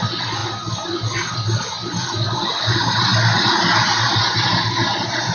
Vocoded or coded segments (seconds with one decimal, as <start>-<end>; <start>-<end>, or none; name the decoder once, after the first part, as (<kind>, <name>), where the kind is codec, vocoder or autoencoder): none